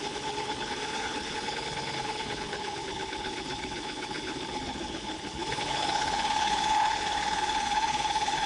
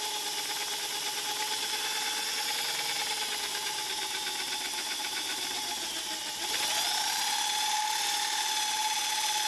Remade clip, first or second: first